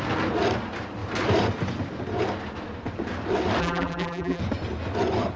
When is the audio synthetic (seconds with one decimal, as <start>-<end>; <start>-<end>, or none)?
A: 3.6-4.4

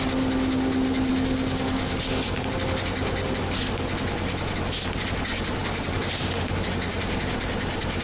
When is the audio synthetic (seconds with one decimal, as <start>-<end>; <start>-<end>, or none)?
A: 1.1-2.5

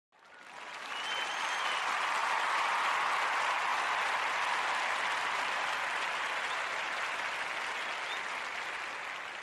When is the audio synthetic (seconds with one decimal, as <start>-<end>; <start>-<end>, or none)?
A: none